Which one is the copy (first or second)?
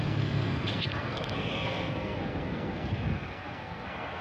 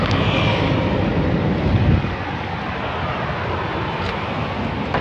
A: first